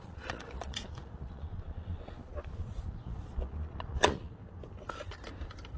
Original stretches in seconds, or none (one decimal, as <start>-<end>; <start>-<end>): 4.4-5.8

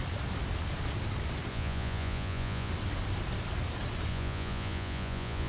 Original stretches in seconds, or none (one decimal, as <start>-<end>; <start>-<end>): 0.0-1.5; 2.7-4.1

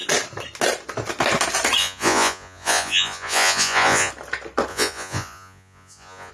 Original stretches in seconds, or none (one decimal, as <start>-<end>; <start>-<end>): 0.0-1.8; 4.1-4.7

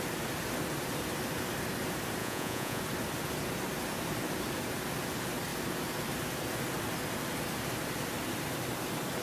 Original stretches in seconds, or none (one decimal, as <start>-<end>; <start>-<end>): 0.0-2.2; 2.8-9.2

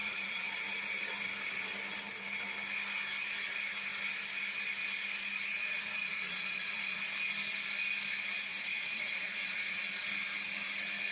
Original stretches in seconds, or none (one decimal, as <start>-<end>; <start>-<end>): 0.5-5.5; 7.0-8.5; 9.8-11.1

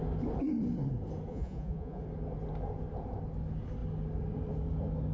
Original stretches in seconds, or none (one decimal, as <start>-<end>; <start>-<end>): 0.0-1.3; 2.0-5.1